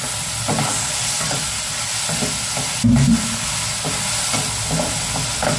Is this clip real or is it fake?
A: real